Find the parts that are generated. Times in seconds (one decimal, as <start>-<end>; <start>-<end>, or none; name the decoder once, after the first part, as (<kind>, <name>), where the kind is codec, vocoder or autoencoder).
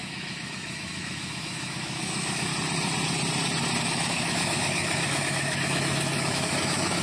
0.0-2.5 (autoencoder, DAC-VAE); 3.8-7.0